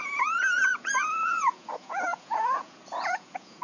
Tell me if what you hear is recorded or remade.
remade